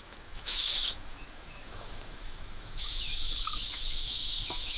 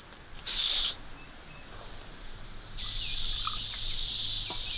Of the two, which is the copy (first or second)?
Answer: first